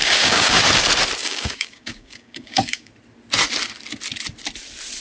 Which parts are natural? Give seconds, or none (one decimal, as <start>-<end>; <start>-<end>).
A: 0.6-1.2; 2.9-5.0